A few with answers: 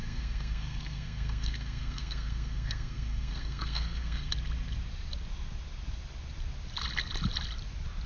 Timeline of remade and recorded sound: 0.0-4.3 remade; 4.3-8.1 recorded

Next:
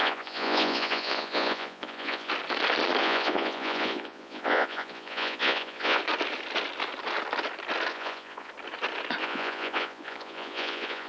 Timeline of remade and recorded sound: 0.0-2.3 remade; 2.3-3.0 recorded; 3.0-6.0 remade; 6.0-7.9 recorded; 7.9-8.5 remade; 8.5-9.2 recorded; 9.2-11.1 remade

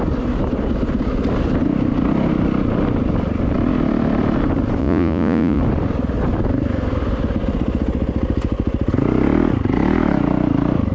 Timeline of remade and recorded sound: 0.0-4.8 recorded; 4.8-5.6 remade; 5.6-10.9 recorded

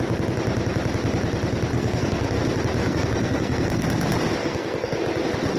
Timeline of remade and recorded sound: 0.0-1.7 recorded; 1.7-2.4 remade; 2.4-2.8 recorded; 2.8-3.9 remade; 3.9-4.4 recorded; 4.4-5.0 remade; 5.0-5.6 recorded

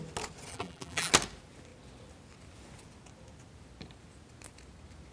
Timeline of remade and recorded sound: 0.0-0.5 recorded; 0.5-1.1 remade; 1.1-5.1 recorded

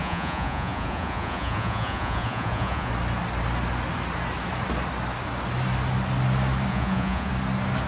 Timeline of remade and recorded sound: 0.0-2.9 remade; 2.9-6.7 recorded; 6.7-7.3 remade; 7.3-7.9 recorded

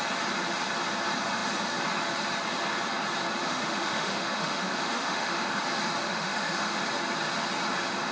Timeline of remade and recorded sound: 0.0-3.4 recorded; 3.4-5.5 remade; 5.5-6.0 recorded; 6.0-6.8 remade; 6.8-8.1 recorded